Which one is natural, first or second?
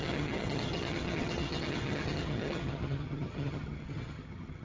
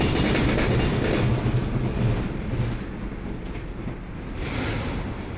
second